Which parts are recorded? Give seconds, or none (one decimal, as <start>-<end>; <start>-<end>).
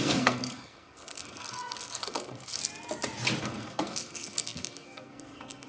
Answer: 2.6-3.4